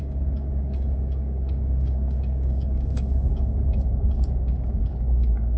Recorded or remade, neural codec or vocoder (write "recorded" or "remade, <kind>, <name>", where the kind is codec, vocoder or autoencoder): remade, codec, DAC